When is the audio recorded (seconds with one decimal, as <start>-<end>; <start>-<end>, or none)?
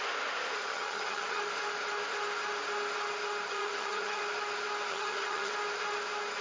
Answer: 0.0-0.7; 1.4-3.5; 4.2-4.9; 5.5-6.4